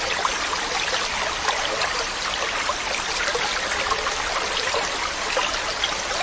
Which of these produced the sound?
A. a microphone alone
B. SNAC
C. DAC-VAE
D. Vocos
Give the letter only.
A